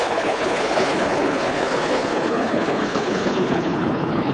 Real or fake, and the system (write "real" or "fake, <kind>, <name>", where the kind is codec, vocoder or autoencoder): fake, codec, HILCodec